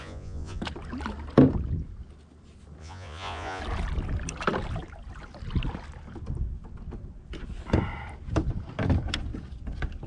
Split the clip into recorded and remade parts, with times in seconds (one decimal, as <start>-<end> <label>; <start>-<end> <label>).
0.0-0.6 remade; 0.6-2.8 recorded; 2.8-3.6 remade; 3.6-10.1 recorded